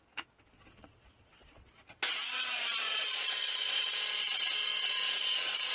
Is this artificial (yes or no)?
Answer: yes